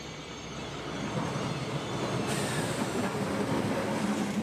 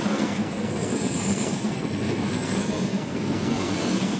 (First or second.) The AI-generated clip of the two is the second